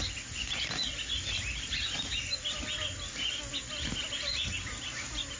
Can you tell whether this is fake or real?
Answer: real